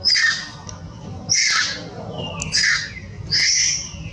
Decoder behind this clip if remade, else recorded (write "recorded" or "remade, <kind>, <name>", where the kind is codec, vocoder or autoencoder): recorded